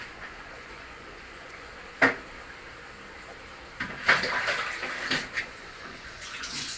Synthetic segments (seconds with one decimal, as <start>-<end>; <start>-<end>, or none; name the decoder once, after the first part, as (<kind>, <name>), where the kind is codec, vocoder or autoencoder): 0.0-1.7 (vocoder, Vocos); 5.4-6.8